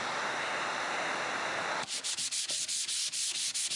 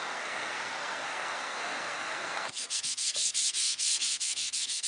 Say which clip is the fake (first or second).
second